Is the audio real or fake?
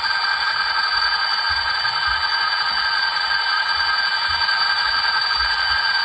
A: fake